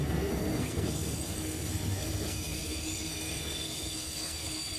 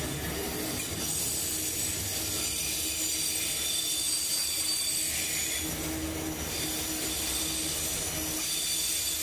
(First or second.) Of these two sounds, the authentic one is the second